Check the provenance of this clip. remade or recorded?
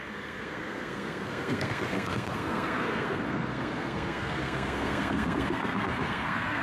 remade